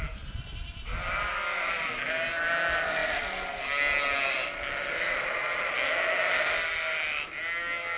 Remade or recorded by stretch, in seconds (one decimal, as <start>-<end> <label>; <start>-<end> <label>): 0.0-8.0 recorded